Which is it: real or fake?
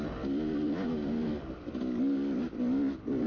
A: real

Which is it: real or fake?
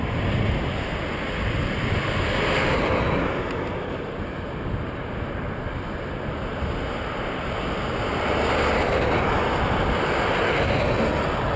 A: real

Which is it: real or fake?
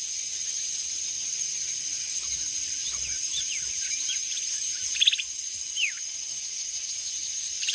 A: real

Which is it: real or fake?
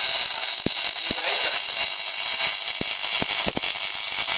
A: real